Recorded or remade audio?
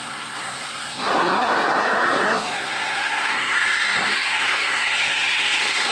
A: remade